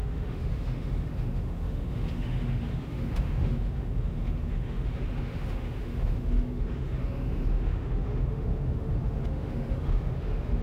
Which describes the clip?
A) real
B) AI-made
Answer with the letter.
B